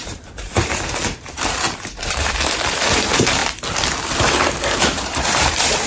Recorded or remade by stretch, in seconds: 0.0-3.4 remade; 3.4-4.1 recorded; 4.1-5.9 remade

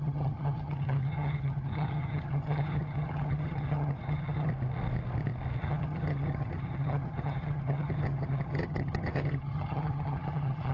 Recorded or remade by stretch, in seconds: 0.0-4.5 remade; 4.5-5.6 recorded; 5.6-10.7 remade